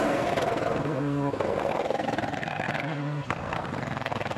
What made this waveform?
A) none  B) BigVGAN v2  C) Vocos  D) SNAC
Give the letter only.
D